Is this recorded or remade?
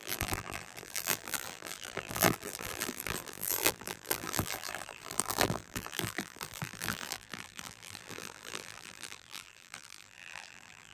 remade